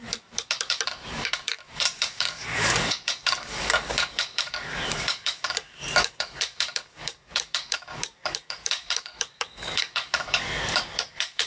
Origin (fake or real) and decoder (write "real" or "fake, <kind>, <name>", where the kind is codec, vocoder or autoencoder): fake, codec, DAC